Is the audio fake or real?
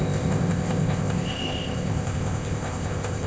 fake